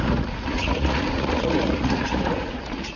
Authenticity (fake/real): fake